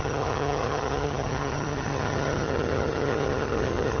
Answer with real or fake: fake